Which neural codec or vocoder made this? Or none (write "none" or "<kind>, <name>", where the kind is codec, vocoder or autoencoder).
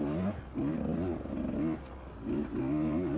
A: none